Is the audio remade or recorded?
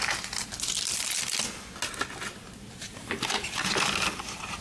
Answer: recorded